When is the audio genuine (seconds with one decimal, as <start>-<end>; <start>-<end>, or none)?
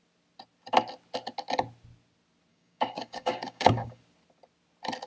0.0-2.5; 4.0-5.1